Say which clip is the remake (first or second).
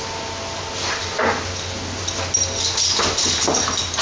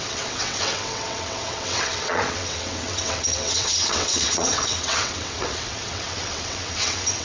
second